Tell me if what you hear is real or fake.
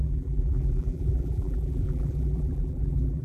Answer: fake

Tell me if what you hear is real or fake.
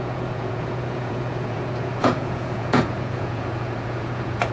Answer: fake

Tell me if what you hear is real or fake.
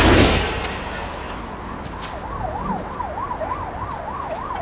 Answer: real